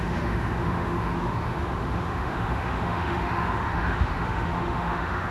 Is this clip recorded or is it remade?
remade